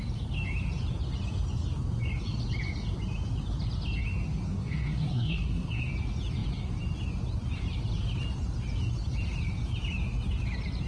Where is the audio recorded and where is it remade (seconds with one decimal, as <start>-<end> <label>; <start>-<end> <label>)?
0.0-4.5 recorded; 4.5-5.8 remade; 5.8-10.9 recorded